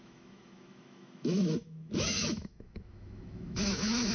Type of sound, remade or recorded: remade